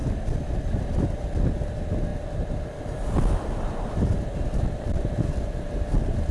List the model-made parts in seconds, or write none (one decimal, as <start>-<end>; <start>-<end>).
0.0-1.3; 2.1-6.3